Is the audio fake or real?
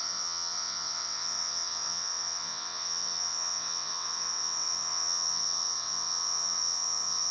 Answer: fake